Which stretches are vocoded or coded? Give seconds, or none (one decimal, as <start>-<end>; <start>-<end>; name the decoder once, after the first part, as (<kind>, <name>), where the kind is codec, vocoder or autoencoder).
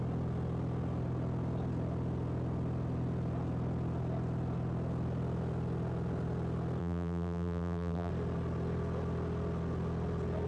6.8-8.1 (vocoder, BigVGAN v2)